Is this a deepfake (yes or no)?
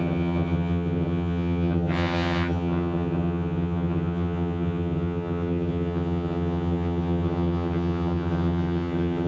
yes